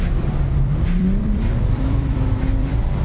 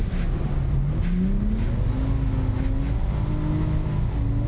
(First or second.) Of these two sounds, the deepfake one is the first